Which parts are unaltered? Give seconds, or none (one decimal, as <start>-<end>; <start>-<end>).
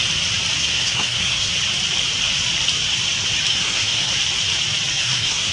0.0-0.6; 1.5-3.5; 4.1-4.9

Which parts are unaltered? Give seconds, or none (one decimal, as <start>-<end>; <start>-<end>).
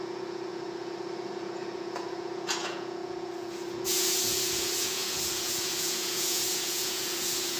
none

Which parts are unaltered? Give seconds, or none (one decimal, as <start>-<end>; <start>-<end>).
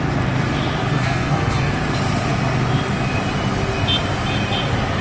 0.0-0.9; 1.7-5.0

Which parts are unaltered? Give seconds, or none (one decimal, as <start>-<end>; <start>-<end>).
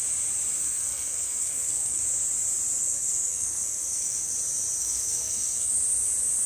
0.0-0.6; 2.0-2.8; 4.3-4.8; 5.7-6.5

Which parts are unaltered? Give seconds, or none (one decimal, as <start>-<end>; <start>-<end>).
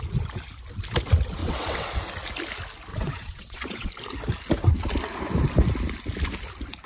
0.0-1.4; 2.0-2.9; 3.9-6.9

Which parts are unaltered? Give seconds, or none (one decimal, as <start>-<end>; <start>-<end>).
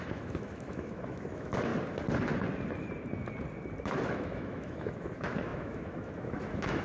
1.7-3.8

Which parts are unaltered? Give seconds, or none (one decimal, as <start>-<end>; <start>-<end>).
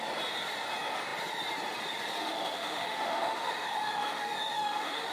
0.0-2.2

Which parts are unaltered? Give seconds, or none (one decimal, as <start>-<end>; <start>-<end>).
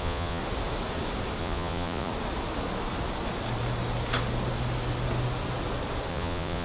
0.4-1.4; 2.1-6.1